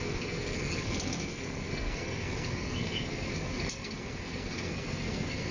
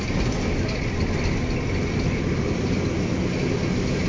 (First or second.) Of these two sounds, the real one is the second